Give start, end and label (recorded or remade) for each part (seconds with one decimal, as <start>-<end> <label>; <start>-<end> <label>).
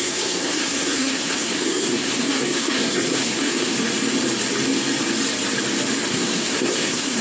0.0-3.7 remade; 3.7-6.1 recorded; 6.1-7.2 remade